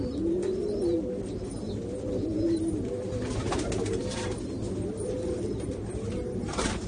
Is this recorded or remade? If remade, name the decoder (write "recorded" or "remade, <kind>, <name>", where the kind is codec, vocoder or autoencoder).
recorded